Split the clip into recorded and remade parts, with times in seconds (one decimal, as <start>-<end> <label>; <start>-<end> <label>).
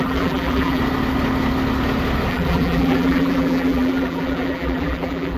0.0-0.8 remade; 0.8-2.3 recorded; 2.3-5.4 remade